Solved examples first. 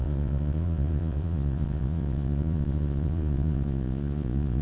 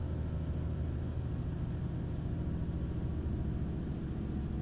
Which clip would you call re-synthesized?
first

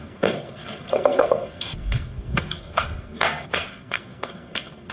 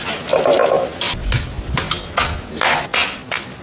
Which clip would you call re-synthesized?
first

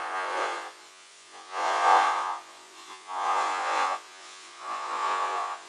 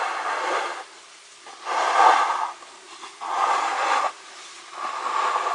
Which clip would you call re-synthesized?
first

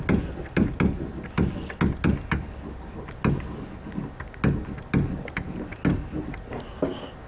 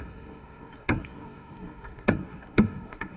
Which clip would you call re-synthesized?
second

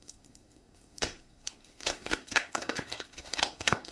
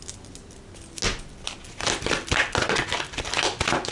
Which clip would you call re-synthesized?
first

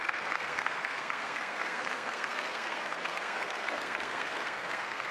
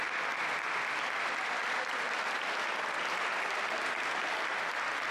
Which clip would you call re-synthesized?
first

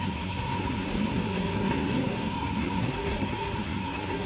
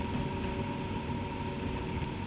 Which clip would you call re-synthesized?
first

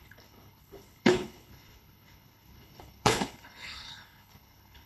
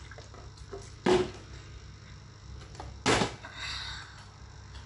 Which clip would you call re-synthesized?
first